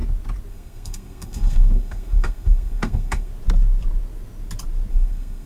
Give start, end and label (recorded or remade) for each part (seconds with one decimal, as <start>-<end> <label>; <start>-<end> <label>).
0.0-0.5 recorded; 0.5-3.3 remade; 3.3-4.9 recorded; 4.9-5.5 remade